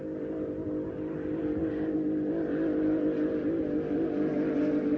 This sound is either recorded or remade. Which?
recorded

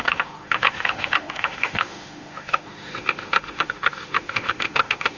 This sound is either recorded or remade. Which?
remade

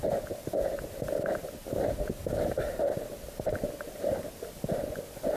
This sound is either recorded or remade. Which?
recorded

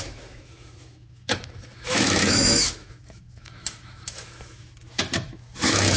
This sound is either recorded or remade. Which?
remade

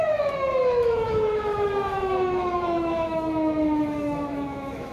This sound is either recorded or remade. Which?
remade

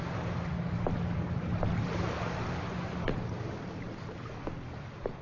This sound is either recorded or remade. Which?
recorded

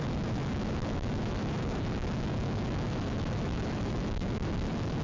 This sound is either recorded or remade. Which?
remade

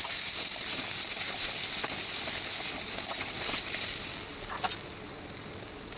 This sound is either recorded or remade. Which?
recorded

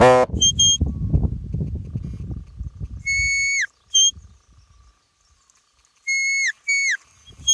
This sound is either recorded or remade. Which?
recorded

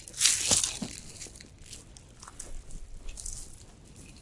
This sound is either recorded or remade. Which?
recorded